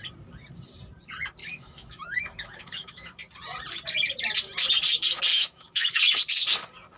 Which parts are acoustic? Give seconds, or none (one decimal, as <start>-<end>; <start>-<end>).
0.0-1.4; 3.2-5.3; 6.0-7.0